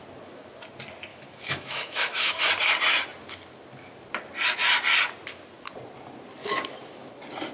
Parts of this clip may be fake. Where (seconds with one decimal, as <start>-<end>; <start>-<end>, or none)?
1.1-2.4; 6.4-7.1